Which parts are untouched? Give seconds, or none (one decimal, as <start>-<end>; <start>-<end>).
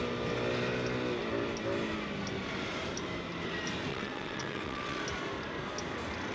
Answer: 0.0-3.9; 5.0-6.3